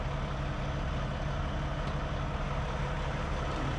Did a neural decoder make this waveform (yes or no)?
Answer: no